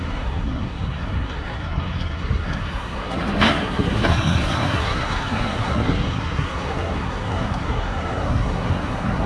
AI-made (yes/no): yes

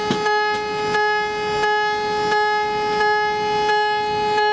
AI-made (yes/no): no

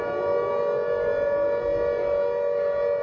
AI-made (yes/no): no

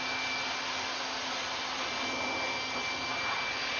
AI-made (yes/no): no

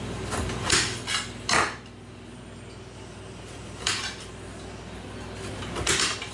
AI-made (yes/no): no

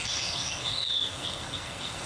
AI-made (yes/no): yes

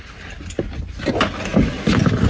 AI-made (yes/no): no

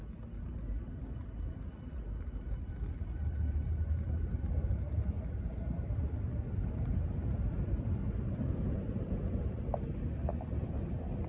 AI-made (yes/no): no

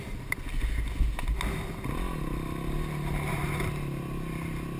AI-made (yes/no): no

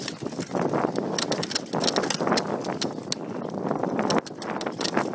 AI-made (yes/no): no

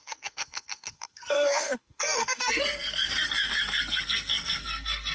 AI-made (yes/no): yes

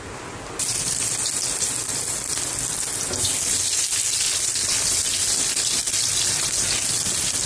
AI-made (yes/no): no